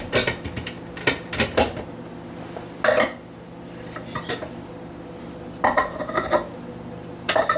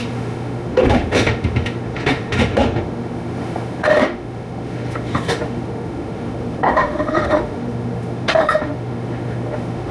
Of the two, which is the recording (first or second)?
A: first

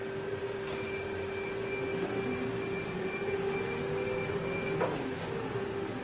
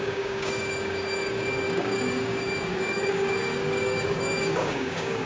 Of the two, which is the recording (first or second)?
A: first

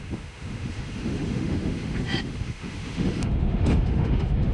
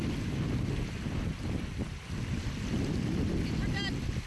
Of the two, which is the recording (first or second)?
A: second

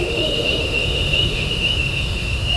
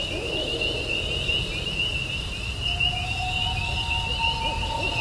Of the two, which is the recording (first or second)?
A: second